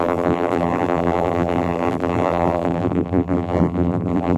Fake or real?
fake